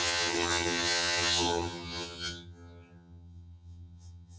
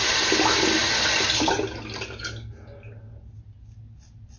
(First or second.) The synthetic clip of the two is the first